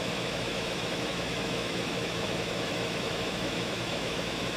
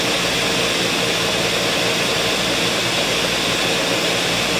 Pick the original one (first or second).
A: second